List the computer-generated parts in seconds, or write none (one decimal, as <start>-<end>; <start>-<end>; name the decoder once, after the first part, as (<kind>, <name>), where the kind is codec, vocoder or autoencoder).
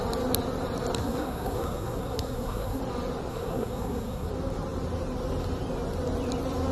1.0-2.8 (codec, SNAC); 3.3-4.3